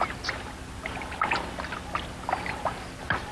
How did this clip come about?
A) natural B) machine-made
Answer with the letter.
A